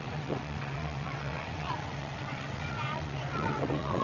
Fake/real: fake